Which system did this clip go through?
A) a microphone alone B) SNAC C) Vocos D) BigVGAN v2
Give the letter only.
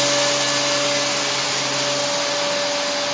A